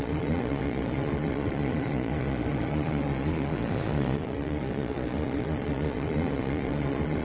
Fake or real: fake